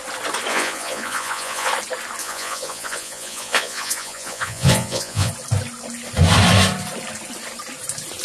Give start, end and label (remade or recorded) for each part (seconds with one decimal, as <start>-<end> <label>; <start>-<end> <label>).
0.0-0.5 recorded; 0.5-1.7 remade; 1.7-2.2 recorded; 2.2-5.3 remade; 5.3-8.2 recorded